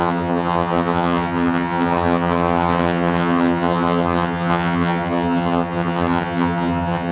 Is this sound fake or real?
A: fake